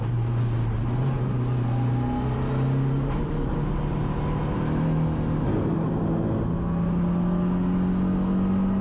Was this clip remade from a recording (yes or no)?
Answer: no